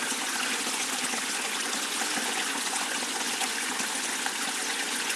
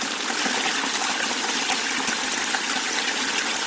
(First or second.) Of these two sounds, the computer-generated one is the first